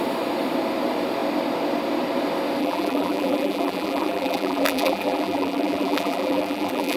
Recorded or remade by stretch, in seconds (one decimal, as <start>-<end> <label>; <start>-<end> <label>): 0.0-2.6 recorded; 2.6-7.0 remade